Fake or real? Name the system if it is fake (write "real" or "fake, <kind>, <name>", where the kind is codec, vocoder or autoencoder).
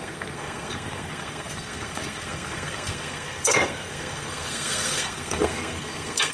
fake, codec, SNAC